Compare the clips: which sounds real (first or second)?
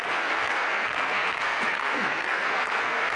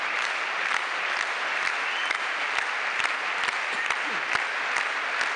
second